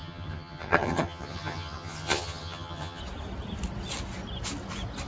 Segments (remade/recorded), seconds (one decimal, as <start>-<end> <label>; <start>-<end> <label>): 0.0-3.0 remade; 3.0-5.1 recorded